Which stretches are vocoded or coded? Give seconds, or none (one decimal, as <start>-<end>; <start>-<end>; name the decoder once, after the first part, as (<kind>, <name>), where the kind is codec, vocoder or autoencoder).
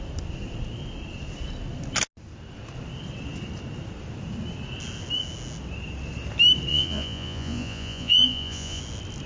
6.7-8.8 (vocoder, Vocos)